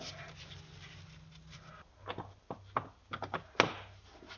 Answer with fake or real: real